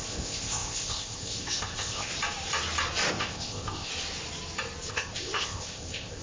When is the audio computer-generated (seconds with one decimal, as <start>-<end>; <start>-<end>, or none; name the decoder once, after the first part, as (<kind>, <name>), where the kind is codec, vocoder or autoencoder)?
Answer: 0.0-2.1 (codec, ZipCodec); 3.1-3.9; 4.9-6.2